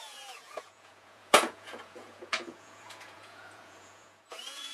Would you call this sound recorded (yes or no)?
no